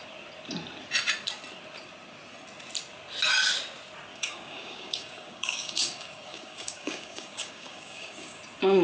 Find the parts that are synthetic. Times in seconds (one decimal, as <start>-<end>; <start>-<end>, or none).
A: 4.1-8.4